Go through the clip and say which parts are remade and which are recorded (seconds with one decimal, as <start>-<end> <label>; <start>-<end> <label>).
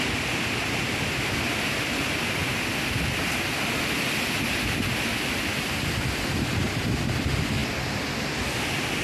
0.0-9.0 recorded